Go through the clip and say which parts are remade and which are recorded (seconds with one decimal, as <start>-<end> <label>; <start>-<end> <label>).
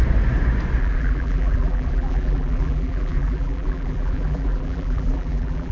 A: 0.0-0.8 recorded; 0.8-5.7 remade